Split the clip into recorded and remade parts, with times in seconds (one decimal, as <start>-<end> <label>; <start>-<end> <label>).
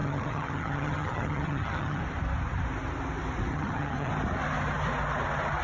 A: 0.0-2.0 remade; 2.0-3.5 recorded; 3.5-4.1 remade; 4.1-5.6 recorded